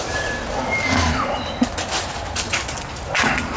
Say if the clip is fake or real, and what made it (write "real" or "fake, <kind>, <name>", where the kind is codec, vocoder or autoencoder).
real